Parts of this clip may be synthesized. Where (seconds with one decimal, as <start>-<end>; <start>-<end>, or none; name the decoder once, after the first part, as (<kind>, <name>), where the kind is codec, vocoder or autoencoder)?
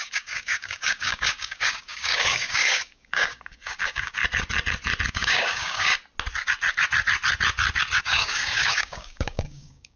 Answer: 0.0-4.2 (codec, DAC); 5.1-5.9; 8.0-10.0